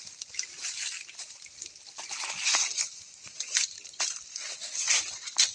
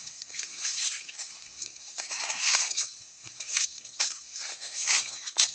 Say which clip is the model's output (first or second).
second